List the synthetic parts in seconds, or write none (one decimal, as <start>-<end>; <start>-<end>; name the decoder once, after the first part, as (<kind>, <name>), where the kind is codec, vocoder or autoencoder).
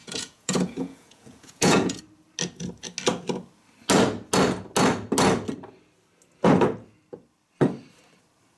0.0-2.0 (vocoder, Vocos)